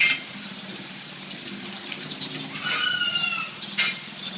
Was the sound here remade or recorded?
recorded